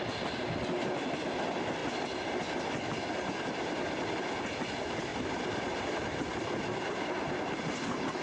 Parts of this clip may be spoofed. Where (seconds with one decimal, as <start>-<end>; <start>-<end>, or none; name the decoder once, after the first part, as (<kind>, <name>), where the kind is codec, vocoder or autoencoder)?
5.1-6.6 (vocoder, BigVGAN v2)